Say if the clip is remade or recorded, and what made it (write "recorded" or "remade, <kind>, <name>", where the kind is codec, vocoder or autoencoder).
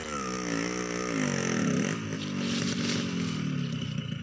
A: recorded